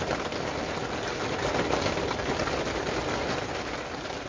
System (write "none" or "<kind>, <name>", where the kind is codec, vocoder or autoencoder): none